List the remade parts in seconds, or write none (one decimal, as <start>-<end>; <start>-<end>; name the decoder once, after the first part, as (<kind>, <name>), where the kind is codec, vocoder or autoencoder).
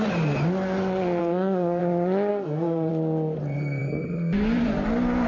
1.2-1.8 (codec, SNAC); 2.3-2.9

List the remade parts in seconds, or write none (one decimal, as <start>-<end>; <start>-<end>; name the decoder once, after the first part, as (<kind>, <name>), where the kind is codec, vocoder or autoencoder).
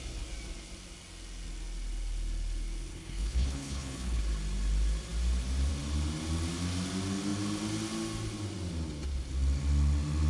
2.9-4.2 (codec, HILCodec)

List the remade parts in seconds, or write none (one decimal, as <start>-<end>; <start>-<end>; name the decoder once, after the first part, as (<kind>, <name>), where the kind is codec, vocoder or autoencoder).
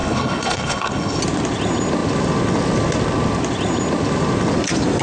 0.0-1.2 (codec, HILCodec)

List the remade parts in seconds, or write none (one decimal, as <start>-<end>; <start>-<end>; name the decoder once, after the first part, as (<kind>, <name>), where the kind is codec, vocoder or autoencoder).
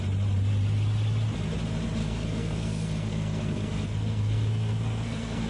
2.0-5.5 (codec, SNAC)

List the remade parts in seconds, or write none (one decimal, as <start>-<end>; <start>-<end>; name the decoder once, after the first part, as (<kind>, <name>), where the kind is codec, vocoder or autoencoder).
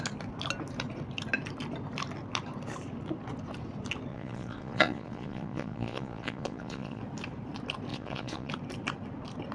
4.1-7.0 (vocoder, Vocos); 7.9-8.5